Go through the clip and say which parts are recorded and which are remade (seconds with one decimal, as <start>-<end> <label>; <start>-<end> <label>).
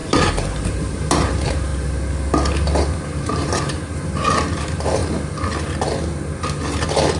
0.0-1.7 remade; 1.7-3.0 recorded; 3.0-5.0 remade; 5.0-7.2 recorded